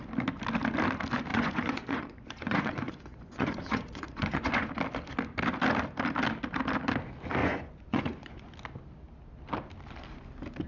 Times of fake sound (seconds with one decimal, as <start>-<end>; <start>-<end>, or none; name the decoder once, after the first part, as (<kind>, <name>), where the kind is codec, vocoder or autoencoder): 1.3-4.7 (vocoder, Vocos); 7.4-8.5